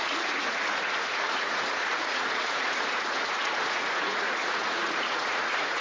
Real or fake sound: fake